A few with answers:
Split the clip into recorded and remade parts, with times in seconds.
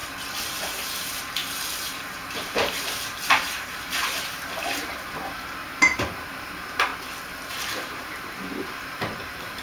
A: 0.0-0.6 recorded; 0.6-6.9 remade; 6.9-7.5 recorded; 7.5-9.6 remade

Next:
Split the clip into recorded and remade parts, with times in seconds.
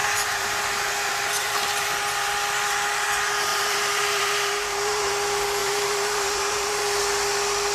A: 0.0-0.6 remade; 0.6-1.4 recorded; 1.4-2.3 remade; 2.3-3.5 recorded; 3.5-5.1 remade; 5.1-5.6 recorded; 5.6-7.0 remade; 7.0-7.7 recorded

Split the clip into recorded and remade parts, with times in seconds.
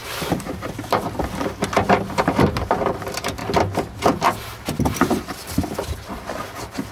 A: 0.0-1.0 remade; 1.0-6.9 recorded